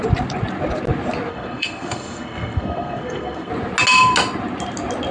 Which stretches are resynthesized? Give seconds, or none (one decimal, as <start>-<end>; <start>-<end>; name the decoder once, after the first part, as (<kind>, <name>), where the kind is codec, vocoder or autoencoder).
1.3-3.5 (codec, SNAC)